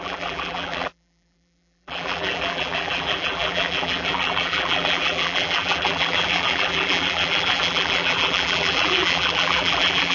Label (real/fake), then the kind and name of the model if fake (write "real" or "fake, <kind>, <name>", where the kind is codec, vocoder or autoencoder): fake, vocoder, BigVGAN v2